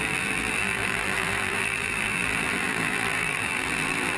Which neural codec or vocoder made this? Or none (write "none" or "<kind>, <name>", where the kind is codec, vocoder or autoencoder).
vocoder, BigVGAN v2